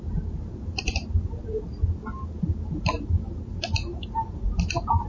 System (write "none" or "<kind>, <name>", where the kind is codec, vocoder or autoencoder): none